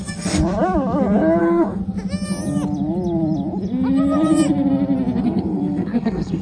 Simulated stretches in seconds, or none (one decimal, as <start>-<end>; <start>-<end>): 0.0-0.4; 1.4-1.8; 5.2-6.4